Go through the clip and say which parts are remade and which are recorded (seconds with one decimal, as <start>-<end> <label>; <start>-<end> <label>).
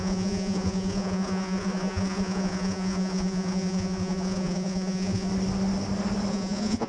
0.0-5.3 remade; 5.3-6.3 recorded; 6.3-6.9 remade